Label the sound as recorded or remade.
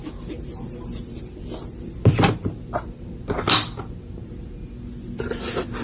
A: recorded